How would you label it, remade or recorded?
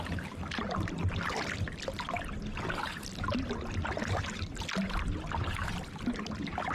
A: recorded